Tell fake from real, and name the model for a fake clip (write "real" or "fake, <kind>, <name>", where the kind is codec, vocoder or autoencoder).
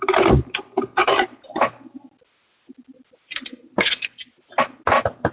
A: real